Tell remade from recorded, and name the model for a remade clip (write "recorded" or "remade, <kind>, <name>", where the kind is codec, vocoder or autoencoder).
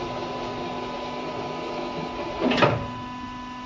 recorded